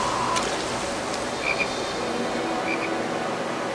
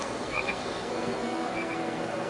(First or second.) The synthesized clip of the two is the second